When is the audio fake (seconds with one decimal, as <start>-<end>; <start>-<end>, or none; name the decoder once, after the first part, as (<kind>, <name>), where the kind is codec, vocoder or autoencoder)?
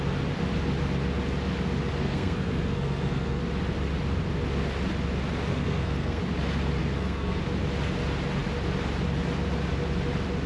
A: 2.0-3.4 (codec, SNAC); 5.5-6.2; 6.8-7.4